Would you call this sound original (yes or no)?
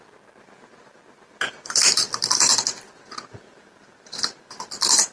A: yes